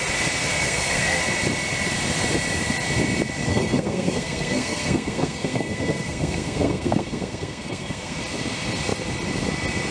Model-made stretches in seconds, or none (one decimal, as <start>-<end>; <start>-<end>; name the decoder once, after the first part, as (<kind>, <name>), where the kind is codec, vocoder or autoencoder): 0.5-1.2 (codec, SNAC); 3.5-8.2